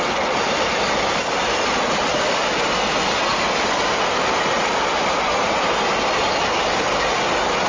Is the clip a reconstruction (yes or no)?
no